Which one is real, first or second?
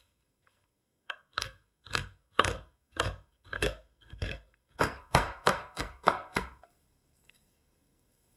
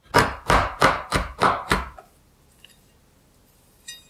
second